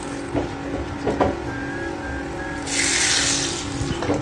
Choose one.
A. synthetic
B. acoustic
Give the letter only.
B